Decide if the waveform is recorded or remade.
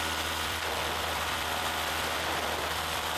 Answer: remade